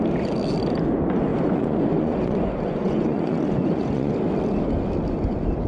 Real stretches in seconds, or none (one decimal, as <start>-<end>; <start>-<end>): 0.0-1.3; 4.1-5.7